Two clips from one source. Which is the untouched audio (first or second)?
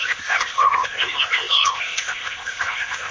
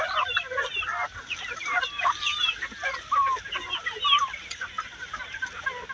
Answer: second